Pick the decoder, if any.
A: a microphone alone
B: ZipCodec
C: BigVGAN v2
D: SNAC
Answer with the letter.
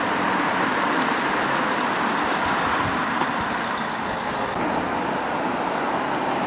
A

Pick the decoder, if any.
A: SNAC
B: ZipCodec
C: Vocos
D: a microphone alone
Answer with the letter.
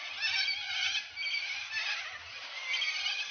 D